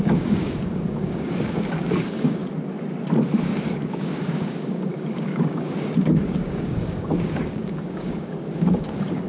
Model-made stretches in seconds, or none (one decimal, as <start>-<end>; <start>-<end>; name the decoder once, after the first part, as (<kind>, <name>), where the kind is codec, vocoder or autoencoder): 0.0-2.4 (codec, DAC); 3.6-9.3